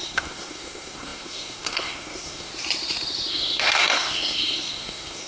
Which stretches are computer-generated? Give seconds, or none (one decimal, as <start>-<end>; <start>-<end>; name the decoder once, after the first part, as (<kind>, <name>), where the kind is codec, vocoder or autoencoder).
0.0-2.5 (codec, SNAC); 3.3-5.3